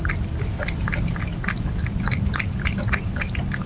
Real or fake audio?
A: real